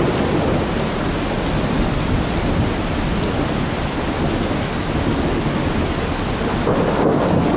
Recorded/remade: recorded